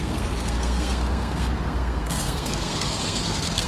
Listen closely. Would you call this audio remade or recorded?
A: remade